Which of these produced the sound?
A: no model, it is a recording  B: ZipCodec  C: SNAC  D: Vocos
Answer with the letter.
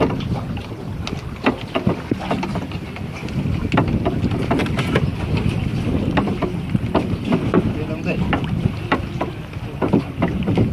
A